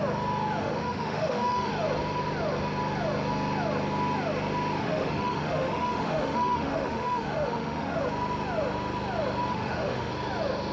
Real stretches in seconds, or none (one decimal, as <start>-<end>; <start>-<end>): 0.0-0.6; 1.7-4.8; 8.0-9.5; 10.1-10.7